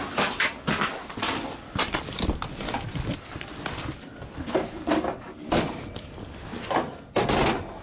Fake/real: real